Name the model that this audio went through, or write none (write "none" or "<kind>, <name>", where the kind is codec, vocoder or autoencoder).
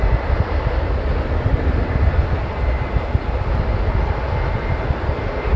none